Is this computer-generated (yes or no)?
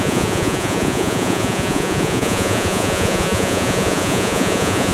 yes